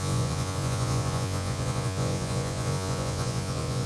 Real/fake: fake